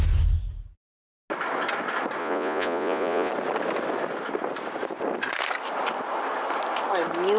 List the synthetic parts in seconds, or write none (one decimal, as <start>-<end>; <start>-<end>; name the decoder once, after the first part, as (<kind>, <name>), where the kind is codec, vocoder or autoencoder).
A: 2.2-3.3 (vocoder, Vocos)